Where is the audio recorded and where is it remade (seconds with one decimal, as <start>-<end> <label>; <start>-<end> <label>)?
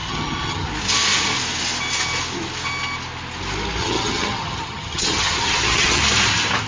0.0-0.7 remade; 0.7-3.8 recorded; 3.8-6.0 remade; 6.0-6.7 recorded